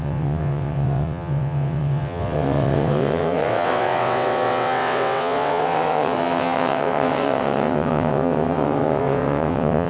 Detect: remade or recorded remade